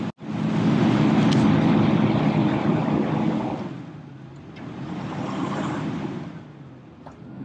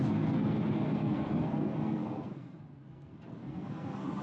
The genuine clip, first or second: first